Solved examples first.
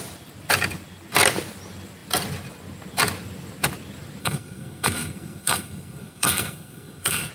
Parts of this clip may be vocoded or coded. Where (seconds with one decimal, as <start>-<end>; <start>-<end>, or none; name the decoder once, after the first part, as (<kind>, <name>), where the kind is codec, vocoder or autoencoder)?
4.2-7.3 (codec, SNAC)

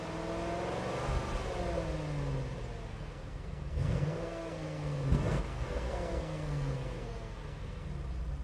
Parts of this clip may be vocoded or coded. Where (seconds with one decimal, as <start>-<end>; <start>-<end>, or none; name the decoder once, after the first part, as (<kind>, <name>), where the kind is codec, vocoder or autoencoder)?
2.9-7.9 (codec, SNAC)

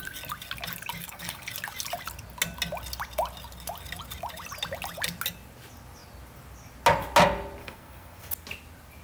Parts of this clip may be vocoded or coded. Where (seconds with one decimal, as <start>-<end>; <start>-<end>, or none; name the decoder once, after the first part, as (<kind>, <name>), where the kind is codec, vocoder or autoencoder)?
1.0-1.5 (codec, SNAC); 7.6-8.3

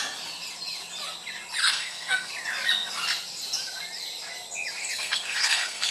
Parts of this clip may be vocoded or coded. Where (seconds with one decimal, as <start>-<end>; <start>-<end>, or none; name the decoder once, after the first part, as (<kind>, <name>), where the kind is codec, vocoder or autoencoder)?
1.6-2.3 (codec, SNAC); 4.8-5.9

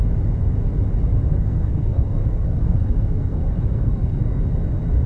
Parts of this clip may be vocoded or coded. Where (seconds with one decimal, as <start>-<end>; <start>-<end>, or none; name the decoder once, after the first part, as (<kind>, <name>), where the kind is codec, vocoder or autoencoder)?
1.3-4.4 (codec, SNAC)